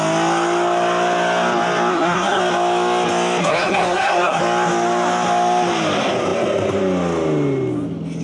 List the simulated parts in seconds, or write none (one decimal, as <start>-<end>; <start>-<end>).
1.9-2.4; 3.4-4.4